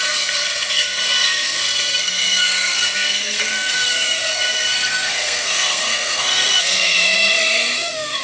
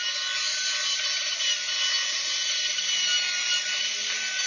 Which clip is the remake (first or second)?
first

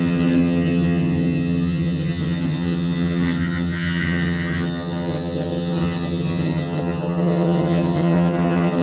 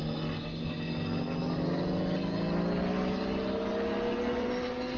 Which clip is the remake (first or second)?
first